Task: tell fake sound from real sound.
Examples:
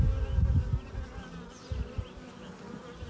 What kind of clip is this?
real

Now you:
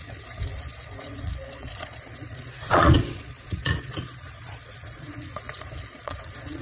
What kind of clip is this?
fake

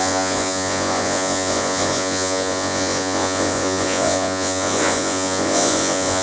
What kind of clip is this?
fake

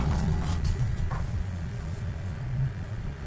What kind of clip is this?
fake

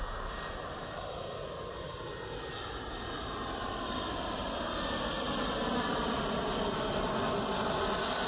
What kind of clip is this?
real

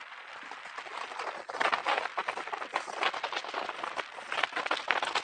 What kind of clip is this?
real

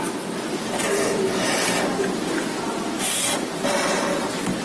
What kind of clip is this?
real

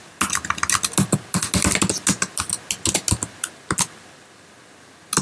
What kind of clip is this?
real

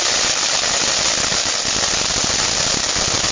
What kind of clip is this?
real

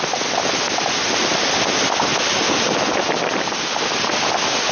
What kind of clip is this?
real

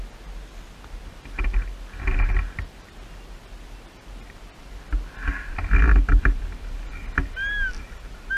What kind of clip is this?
real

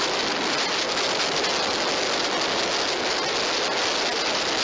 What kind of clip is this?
real